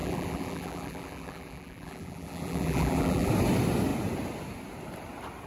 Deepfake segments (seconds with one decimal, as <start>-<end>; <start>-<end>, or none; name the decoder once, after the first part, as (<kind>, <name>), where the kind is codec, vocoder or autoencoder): 0.0-3.3 (vocoder, BigVGAN v2)